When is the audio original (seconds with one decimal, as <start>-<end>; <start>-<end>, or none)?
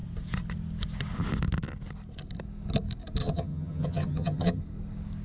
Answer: 0.0-3.2; 4.6-5.2